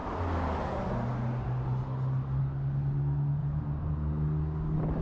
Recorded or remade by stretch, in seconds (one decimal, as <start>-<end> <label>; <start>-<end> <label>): 0.0-3.4 recorded; 3.4-3.9 remade; 3.9-5.0 recorded